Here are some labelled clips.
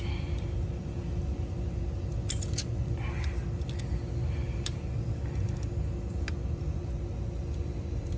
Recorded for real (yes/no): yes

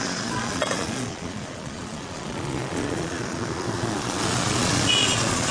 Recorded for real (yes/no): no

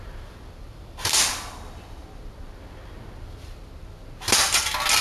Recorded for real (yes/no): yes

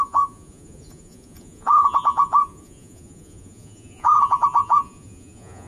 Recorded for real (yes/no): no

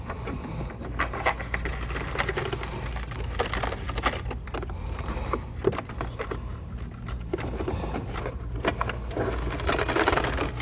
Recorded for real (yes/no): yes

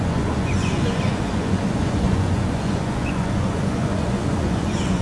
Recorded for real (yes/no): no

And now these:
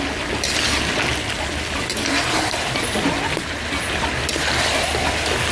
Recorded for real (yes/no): yes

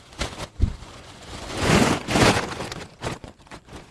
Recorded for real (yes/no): no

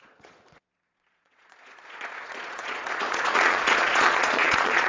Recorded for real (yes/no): no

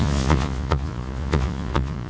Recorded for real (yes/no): no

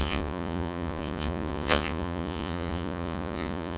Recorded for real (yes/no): no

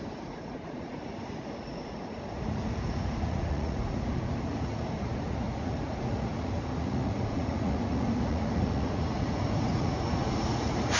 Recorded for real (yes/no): no